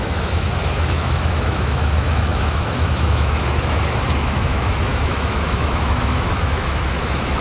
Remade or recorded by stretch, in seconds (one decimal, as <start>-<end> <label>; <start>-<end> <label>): 0.0-7.4 remade